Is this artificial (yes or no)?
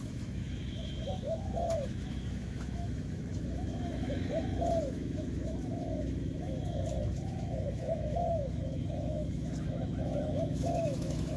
yes